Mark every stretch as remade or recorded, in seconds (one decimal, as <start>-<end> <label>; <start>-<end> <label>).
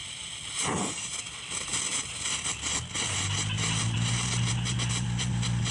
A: 0.0-5.7 recorded